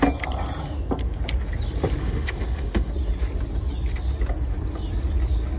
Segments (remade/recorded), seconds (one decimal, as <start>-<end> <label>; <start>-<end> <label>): 0.0-2.0 recorded; 2.0-2.9 remade; 2.9-5.6 recorded